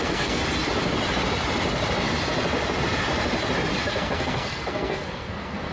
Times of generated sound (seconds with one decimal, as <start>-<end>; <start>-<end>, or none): 0.0-0.4; 3.8-5.7

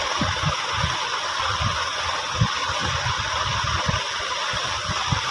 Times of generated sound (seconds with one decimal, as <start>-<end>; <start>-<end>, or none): none

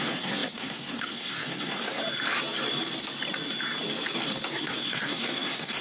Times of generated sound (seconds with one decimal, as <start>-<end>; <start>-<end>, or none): 0.0-2.0; 4.5-5.8